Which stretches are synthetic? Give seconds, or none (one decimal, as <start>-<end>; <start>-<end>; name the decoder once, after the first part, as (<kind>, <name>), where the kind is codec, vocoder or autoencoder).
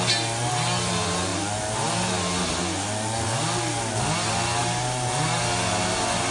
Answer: none